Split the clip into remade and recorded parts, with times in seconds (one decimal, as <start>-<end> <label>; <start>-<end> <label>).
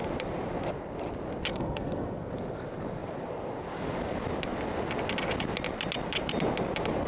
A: 0.0-1.5 recorded; 1.5-2.3 remade; 2.3-7.1 recorded